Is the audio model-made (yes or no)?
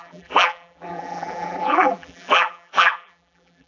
yes